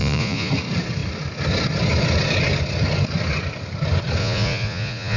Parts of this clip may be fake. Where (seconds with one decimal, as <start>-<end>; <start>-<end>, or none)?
0.0-0.5; 4.2-5.2